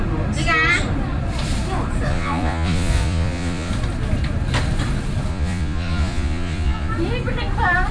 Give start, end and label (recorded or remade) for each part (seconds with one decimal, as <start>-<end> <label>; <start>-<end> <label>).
0.0-2.1 recorded; 2.1-3.7 remade; 3.7-5.3 recorded; 5.3-6.9 remade; 6.9-7.9 recorded